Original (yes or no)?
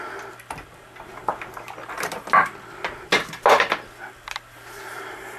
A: yes